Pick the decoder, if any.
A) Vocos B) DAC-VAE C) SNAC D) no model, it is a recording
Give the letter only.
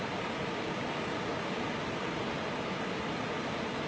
D